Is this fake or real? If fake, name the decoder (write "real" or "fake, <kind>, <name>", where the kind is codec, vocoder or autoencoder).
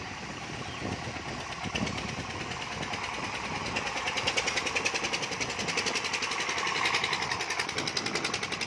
real